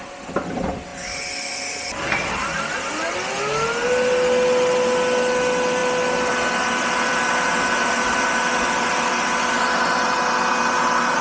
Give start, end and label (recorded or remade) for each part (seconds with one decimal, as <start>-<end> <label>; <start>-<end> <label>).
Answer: 0.0-11.2 recorded